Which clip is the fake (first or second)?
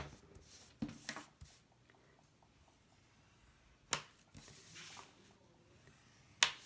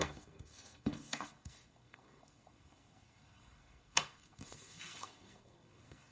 second